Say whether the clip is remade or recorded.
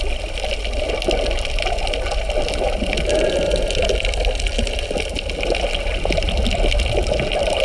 recorded